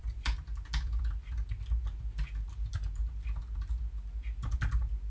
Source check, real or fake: real